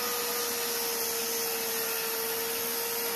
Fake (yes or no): no